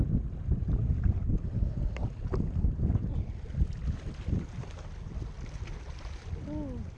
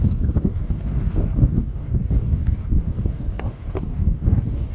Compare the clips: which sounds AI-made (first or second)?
second